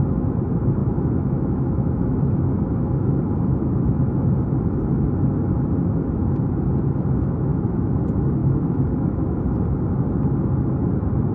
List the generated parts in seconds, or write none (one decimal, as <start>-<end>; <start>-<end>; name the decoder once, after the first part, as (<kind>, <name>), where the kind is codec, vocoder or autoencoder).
0.8-4.4 (autoencoder, DAC-VAE); 7.5-8.0; 8.4-9.4